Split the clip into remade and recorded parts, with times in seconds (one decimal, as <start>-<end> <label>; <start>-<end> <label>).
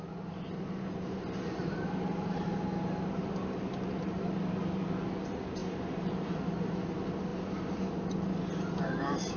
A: 0.0-0.9 recorded; 0.9-4.6 remade; 4.6-5.6 recorded; 5.6-6.8 remade; 6.8-7.3 recorded; 7.3-9.4 remade